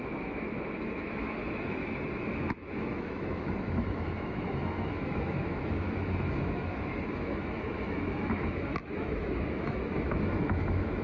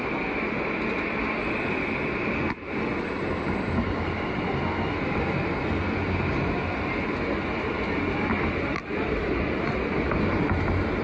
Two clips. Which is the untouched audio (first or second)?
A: second